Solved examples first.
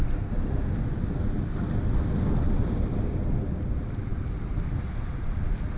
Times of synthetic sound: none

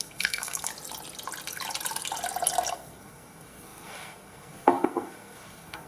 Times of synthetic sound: 0.0-0.7 (codec, SNAC); 2.7-5.9

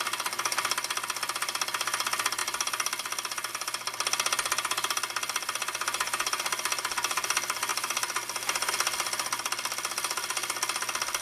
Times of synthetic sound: none

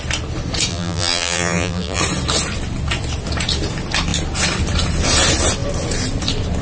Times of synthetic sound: 0.7-2.0 (vocoder, BigVGAN v2)